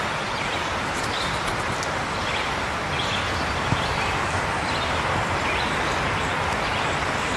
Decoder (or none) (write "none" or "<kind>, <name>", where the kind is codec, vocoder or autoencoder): none